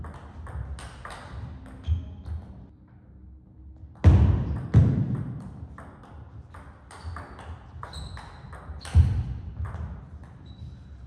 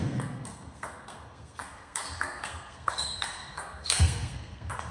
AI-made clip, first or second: second